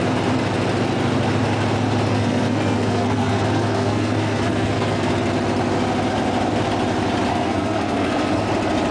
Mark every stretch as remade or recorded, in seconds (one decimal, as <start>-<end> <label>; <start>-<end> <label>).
0.0-2.1 recorded; 2.1-5.1 remade; 5.1-7.3 recorded; 7.3-8.4 remade; 8.4-8.9 recorded